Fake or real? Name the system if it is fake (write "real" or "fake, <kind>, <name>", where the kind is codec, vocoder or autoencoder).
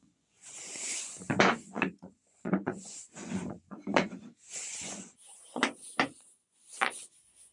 fake, vocoder, Vocos